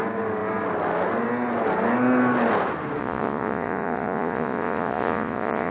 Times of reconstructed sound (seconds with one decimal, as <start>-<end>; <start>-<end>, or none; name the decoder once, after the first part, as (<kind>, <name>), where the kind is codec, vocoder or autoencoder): 3.0-5.7 (vocoder, Vocos)